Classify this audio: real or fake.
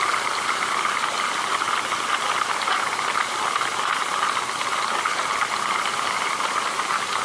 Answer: real